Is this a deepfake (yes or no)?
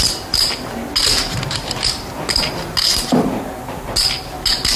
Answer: no